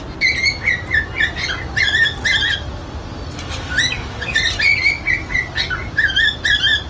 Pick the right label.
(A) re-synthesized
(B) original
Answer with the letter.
B